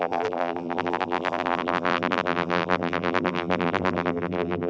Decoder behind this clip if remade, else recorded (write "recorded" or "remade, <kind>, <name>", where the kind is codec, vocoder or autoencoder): remade, vocoder, BigVGAN v2